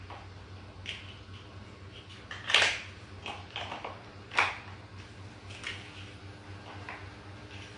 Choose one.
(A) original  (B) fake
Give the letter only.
A